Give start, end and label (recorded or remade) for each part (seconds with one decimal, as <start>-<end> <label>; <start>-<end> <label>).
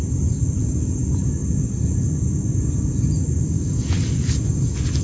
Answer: 0.0-5.0 recorded